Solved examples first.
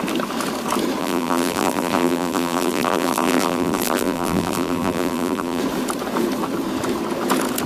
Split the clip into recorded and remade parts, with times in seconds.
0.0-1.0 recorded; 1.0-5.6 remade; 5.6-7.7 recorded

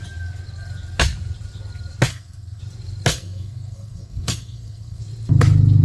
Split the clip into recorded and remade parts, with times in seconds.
0.0-2.1 recorded; 2.1-2.6 remade; 2.6-3.1 recorded; 3.1-5.0 remade; 5.0-5.8 recorded

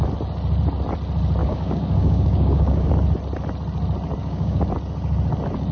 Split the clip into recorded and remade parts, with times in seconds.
0.0-1.4 recorded; 1.4-2.9 remade; 2.9-4.2 recorded; 4.2-4.7 remade; 4.7-5.7 recorded

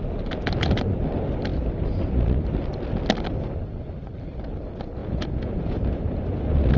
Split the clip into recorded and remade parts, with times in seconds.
0.0-5.0 recorded; 5.0-6.0 remade; 6.0-6.8 recorded

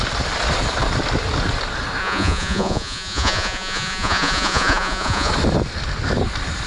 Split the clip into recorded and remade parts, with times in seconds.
0.0-2.0 recorded; 2.0-5.3 remade; 5.3-6.7 recorded